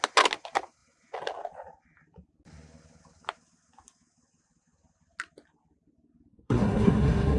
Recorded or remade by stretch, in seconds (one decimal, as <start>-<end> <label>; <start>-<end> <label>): 0.0-6.3 recorded; 6.3-7.4 remade